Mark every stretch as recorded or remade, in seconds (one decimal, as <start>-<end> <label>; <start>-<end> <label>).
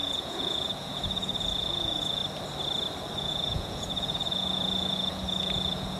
0.0-2.2 remade; 2.2-3.2 recorded; 3.2-6.0 remade